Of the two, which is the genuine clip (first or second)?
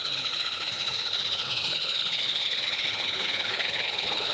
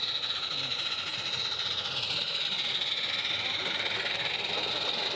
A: second